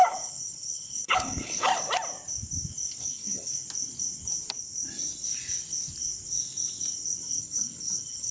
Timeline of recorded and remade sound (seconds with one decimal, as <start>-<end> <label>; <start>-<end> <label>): 0.0-1.7 remade; 1.7-3.0 recorded; 3.0-3.5 remade; 3.5-7.4 recorded; 7.4-8.3 remade